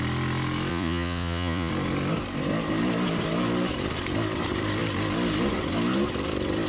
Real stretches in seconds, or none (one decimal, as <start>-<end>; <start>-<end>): 0.0-0.7; 1.7-6.7

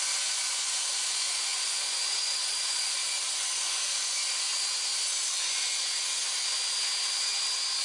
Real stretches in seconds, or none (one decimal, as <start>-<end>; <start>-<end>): 4.5-5.4; 6.2-7.8

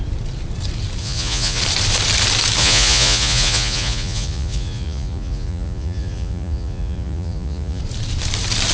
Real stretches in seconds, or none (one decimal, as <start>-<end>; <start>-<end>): 0.0-1.0; 1.6-2.6; 7.8-8.7

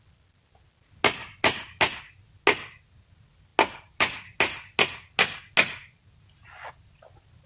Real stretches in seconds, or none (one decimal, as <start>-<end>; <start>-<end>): 0.0-7.5

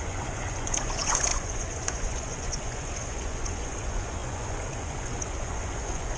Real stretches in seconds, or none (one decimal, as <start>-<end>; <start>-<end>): none

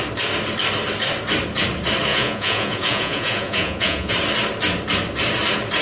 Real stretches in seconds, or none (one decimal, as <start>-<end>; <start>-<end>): 0.0-2.1; 4.1-5.8